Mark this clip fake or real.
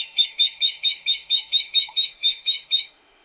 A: fake